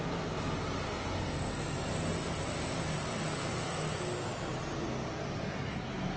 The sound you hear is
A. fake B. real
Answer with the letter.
B